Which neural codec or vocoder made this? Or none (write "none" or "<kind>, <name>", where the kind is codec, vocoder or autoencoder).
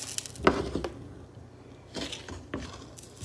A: none